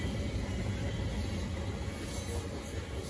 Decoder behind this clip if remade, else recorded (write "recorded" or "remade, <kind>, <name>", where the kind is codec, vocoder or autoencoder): recorded